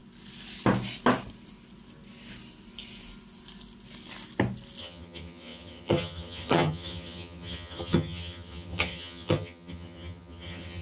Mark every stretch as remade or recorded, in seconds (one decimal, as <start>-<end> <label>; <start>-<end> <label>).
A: 0.0-4.8 recorded; 4.8-10.8 remade